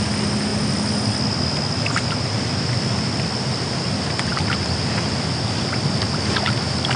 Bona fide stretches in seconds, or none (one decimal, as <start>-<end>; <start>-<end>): 0.0-4.3